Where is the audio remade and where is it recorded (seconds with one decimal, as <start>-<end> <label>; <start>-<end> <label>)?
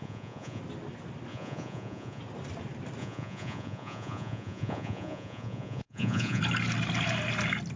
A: 0.0-0.6 remade; 0.6-1.3 recorded; 1.3-2.2 remade; 2.2-3.0 recorded; 3.0-6.4 remade; 6.4-7.8 recorded